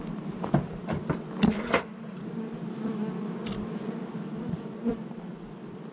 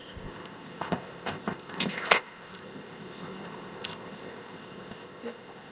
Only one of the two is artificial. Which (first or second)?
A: second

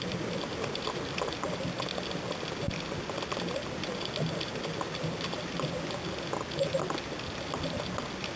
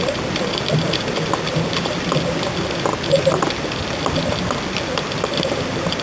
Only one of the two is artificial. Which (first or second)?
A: second